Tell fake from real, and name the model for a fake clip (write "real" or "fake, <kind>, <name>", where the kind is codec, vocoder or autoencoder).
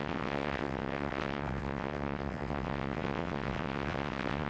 fake, vocoder, WaveNeXt